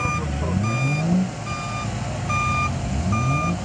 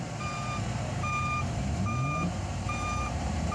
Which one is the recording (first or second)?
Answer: first